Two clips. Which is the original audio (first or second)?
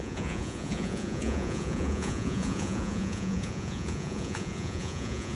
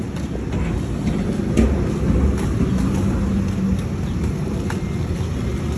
second